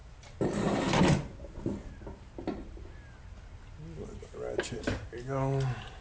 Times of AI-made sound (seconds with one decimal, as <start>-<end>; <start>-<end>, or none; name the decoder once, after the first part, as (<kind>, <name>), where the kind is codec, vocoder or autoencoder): none